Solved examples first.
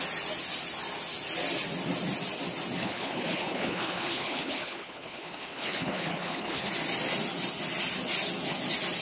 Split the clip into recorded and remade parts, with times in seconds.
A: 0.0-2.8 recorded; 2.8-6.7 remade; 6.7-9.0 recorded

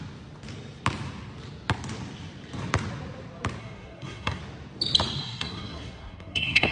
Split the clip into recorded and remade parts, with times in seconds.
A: 0.0-3.6 recorded; 3.6-4.4 remade; 4.4-5.2 recorded; 5.2-6.7 remade

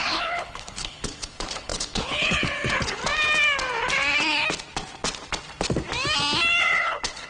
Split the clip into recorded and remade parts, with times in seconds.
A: 0.0-3.0 remade; 3.0-6.6 recorded; 6.6-7.3 remade

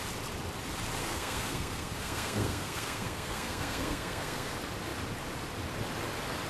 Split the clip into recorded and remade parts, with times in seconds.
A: 0.0-1.0 recorded; 1.0-4.5 remade; 4.5-6.5 recorded

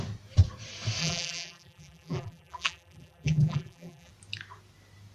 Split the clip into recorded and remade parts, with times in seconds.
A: 0.0-1.0 recorded; 1.0-4.1 remade; 4.1-5.1 recorded

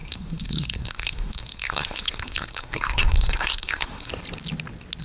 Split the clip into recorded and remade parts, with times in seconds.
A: 0.0-4.1 remade; 4.1-5.0 recorded

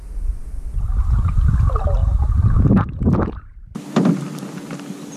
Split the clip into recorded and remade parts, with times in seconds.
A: 0.0-5.2 recorded